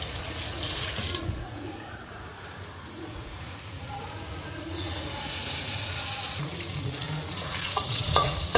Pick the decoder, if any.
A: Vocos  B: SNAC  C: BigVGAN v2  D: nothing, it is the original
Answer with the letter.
A